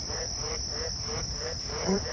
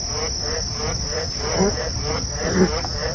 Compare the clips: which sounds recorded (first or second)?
second